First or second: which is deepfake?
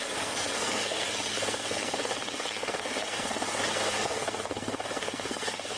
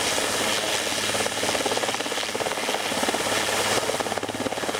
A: first